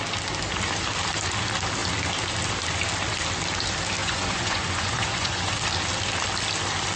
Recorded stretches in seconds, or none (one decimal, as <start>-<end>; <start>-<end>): 0.0-4.0; 5.5-7.0